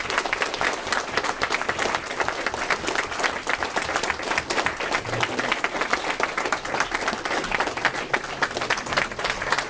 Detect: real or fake real